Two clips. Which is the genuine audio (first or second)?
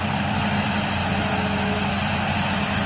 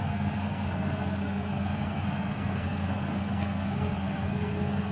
first